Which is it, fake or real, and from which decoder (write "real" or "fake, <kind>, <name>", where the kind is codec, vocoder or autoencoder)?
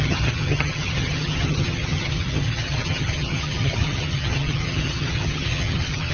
fake, vocoder, HiFi-GAN